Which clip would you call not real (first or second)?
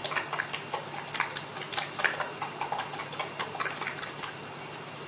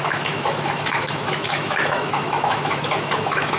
second